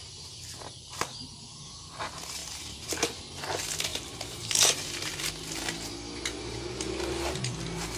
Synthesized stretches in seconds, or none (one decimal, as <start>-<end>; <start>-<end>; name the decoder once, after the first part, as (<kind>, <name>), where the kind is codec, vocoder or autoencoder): 2.4-3.2 (vocoder, BigVGAN v2); 3.9-5.3